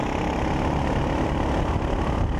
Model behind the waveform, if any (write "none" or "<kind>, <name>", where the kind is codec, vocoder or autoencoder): none